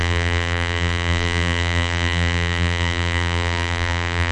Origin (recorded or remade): remade